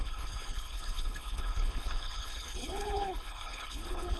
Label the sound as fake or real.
fake